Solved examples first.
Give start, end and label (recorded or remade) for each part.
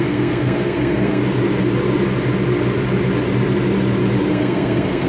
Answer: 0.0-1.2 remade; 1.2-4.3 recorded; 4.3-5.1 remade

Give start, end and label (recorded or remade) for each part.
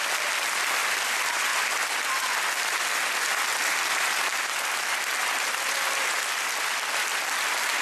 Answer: 0.0-1.5 remade; 1.5-3.0 recorded; 3.0-7.8 remade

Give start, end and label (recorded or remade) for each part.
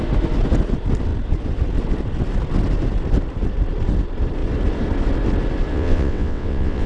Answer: 0.0-5.7 recorded; 5.7-6.9 remade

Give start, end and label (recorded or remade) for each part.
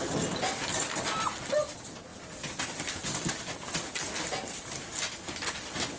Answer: 0.0-6.0 recorded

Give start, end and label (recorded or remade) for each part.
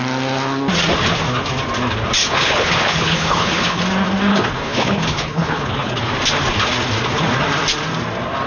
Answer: 0.0-2.2 recorded; 2.2-3.8 remade; 3.8-4.3 recorded; 4.3-6.0 remade; 6.0-8.5 recorded